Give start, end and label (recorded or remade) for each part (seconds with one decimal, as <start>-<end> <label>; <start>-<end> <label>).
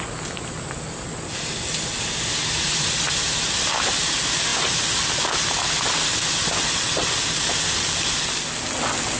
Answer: 0.0-9.2 recorded